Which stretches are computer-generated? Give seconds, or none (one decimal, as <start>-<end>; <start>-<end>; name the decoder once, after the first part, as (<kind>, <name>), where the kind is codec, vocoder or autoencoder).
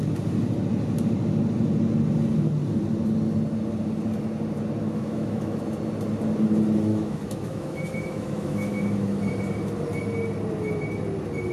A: 4.8-5.6 (autoencoder, DAC-VAE); 6.9-9.2